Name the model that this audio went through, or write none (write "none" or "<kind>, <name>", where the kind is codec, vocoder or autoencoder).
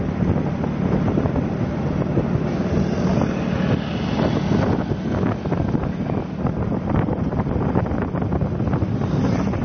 none